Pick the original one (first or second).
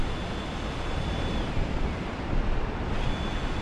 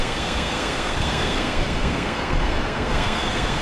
first